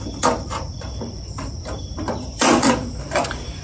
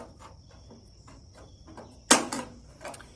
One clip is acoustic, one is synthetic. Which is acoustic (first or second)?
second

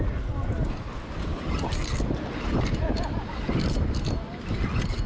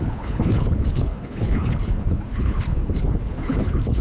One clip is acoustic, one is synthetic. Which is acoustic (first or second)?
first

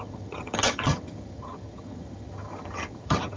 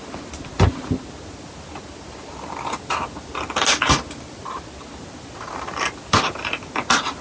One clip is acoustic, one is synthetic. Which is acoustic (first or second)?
second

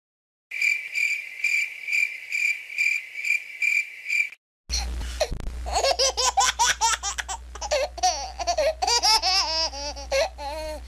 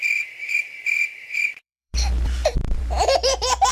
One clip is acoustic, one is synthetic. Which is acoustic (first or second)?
first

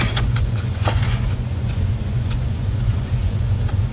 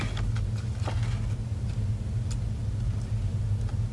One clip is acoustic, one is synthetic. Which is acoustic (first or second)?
second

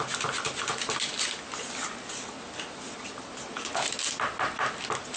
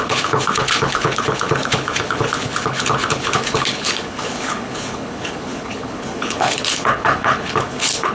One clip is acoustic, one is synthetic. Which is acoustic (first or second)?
first